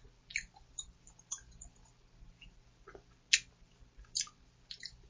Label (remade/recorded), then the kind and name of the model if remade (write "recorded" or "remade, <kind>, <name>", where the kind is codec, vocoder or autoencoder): recorded